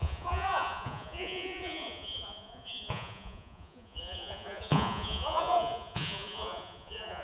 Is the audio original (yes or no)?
no